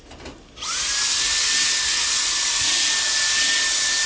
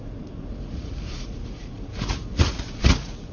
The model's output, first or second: second